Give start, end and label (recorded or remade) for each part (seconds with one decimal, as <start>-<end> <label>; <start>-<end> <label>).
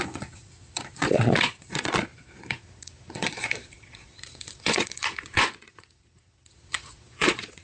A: 0.0-7.6 remade